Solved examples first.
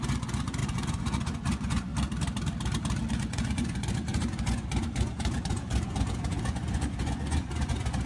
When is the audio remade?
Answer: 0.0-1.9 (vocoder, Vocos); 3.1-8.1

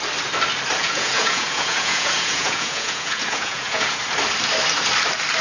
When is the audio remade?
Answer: 0.8-4.0 (vocoder, Vocos)

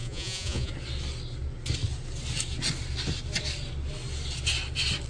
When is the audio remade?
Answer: 0.0-0.7 (vocoder, Vocos)

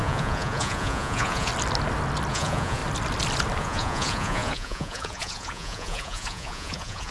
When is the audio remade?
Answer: 0.0-1.5 (vocoder, Vocos); 2.3-2.8; 3.6-7.1

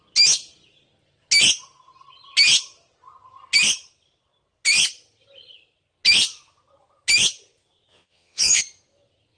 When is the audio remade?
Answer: 7.9-8.6 (vocoder, Vocos)